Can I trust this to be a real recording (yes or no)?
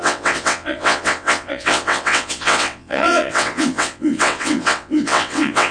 no